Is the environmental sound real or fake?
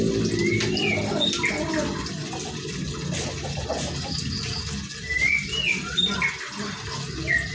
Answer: real